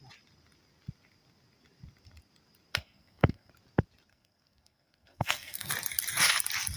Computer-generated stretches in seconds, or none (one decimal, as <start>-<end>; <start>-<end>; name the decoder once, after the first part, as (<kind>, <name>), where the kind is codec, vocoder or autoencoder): 2.7-3.5 (codec, SNAC); 4.1-5.7